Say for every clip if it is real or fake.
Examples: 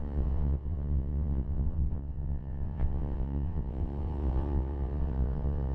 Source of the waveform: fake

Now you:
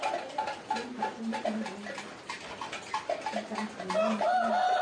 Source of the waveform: real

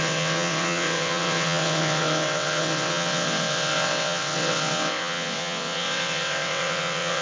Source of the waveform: fake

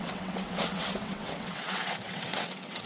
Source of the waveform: fake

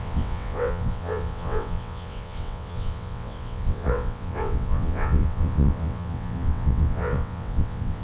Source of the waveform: fake